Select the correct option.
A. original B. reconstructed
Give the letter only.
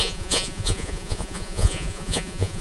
B